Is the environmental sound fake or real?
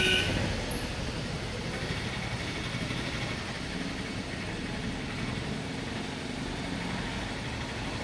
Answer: real